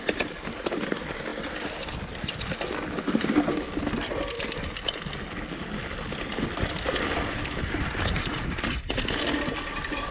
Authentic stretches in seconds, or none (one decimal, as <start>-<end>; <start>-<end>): 0.0-10.1